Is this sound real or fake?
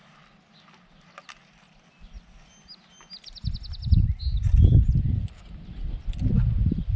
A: real